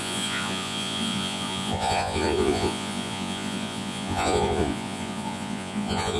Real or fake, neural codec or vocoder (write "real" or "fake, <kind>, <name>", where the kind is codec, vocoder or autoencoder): fake, vocoder, Vocos